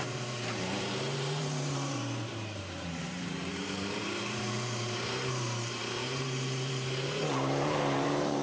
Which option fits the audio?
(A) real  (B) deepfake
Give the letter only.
B